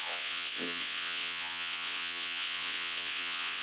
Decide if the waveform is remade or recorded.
remade